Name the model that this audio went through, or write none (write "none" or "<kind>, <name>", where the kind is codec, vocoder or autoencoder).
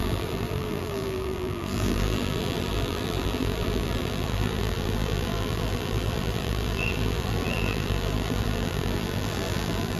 vocoder, BigVGAN v2